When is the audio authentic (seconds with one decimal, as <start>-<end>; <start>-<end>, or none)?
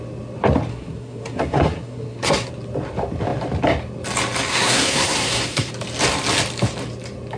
0.0-0.7; 2.5-4.5; 5.7-7.4